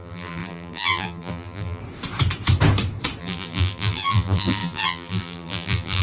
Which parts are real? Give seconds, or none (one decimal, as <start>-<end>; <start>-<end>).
1.8-3.2